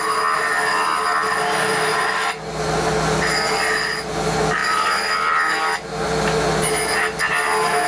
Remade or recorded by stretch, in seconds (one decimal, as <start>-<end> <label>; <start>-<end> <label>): 0.0-7.9 recorded